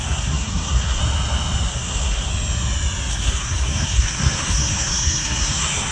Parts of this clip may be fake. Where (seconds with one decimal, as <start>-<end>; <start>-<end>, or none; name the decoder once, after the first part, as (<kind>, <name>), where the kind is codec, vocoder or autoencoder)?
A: 0.0-1.0 (codec, SNAC); 1.7-2.3; 3.1-5.9